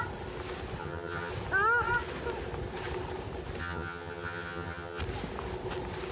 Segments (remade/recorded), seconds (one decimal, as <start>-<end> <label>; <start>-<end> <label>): 0.0-0.8 recorded; 0.8-1.3 remade; 1.3-3.6 recorded; 3.6-5.0 remade; 5.0-6.1 recorded